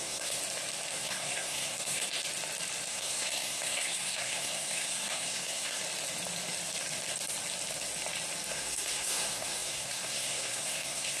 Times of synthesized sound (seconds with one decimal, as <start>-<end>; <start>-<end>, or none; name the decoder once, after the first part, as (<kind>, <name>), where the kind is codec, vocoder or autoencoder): 0.0-0.4 (codec, SNAC); 0.9-2.1; 2.9-5.8; 8.5-11.2